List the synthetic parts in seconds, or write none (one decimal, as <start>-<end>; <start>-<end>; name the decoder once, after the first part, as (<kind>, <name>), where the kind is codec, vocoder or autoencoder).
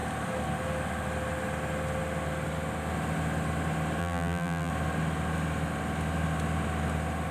4.0-4.7 (vocoder, BigVGAN v2)